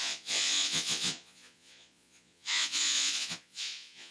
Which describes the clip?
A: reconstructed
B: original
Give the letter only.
A